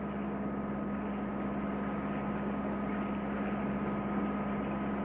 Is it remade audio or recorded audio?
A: recorded